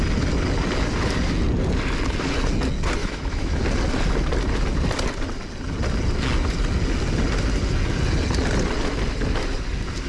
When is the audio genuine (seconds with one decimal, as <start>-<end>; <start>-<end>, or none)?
0.0-3.0; 3.6-10.1